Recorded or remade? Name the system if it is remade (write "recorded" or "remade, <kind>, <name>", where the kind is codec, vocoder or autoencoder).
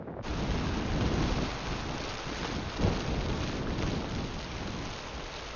recorded